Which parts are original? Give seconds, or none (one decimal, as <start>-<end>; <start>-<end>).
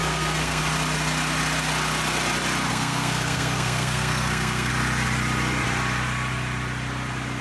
0.6-2.7; 4.7-7.4